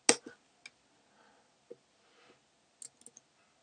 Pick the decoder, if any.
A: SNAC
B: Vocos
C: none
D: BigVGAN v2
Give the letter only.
C